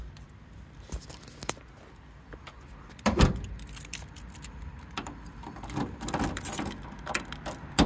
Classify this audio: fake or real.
real